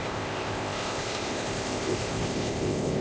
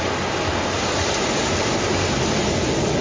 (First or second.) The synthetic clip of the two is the first